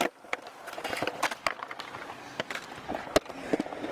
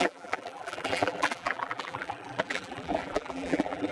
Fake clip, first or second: second